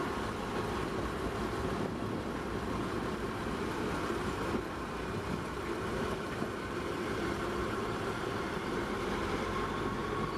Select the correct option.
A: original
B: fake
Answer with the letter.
B